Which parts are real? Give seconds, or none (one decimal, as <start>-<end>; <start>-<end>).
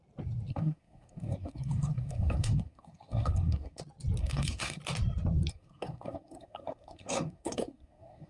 0.0-0.5; 3.8-4.2; 4.8-5.5